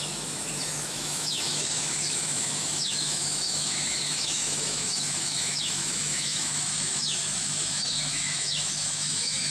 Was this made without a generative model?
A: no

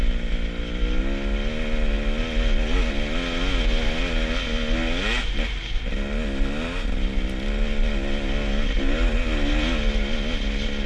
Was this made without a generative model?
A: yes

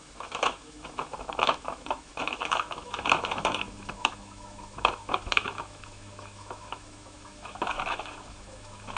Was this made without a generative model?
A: no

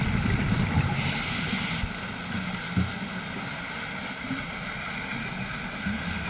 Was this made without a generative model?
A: yes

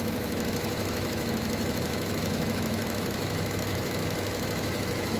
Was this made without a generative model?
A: no